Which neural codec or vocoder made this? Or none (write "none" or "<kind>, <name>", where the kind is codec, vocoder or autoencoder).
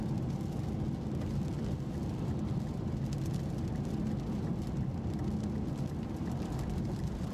none